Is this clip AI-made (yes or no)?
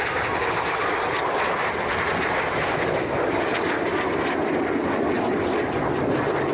no